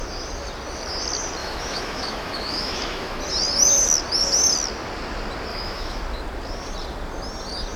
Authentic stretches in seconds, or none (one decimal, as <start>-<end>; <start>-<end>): 0.0-1.4; 3.2-5.5; 6.0-7.8